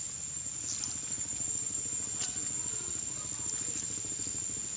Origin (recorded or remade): recorded